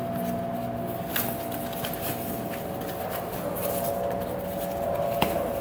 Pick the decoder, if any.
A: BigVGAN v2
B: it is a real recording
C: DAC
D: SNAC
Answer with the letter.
B